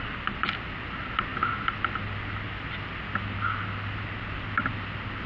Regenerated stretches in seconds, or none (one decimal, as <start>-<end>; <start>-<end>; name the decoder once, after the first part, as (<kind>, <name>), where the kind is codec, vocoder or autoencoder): none